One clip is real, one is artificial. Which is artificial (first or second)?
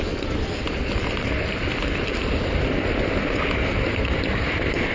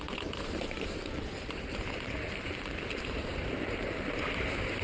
second